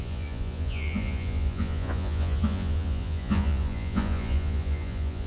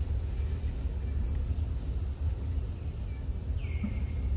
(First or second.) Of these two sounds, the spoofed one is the first